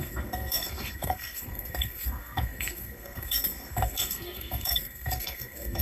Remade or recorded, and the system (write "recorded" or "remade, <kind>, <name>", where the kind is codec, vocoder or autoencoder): remade, codec, SNAC